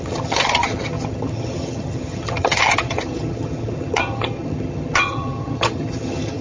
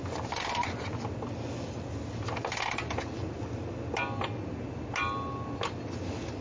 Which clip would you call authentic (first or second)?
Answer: second